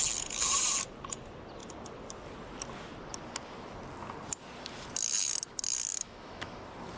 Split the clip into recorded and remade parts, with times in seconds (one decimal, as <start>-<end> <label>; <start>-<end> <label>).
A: 0.0-5.9 recorded; 5.9-6.6 remade; 6.6-7.0 recorded